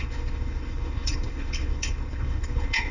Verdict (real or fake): fake